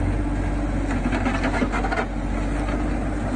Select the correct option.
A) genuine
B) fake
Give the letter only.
A